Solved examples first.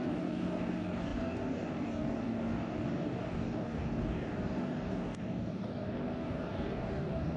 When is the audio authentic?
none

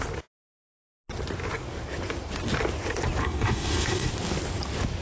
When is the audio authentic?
0.0-3.2; 4.1-5.0